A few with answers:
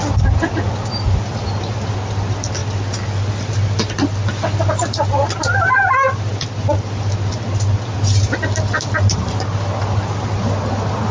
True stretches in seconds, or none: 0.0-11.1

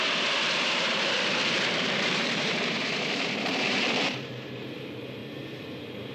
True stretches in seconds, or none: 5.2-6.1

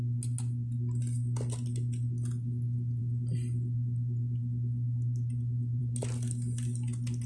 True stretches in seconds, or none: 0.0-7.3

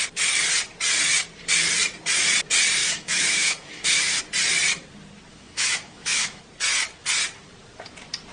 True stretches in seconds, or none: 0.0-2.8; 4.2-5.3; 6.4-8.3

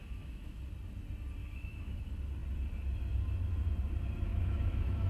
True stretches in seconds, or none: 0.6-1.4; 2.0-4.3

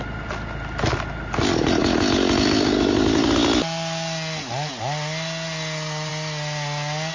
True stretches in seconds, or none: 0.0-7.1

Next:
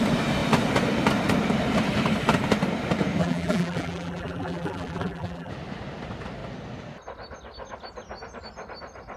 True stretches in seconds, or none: 0.0-3.2; 5.5-9.2

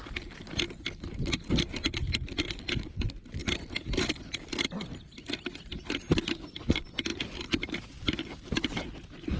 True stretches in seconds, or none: 0.0-9.4